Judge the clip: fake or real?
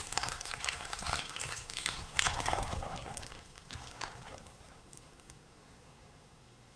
fake